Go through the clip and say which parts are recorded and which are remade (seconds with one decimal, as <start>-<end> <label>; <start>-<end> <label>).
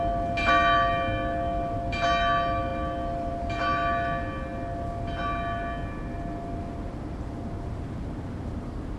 0.0-9.0 recorded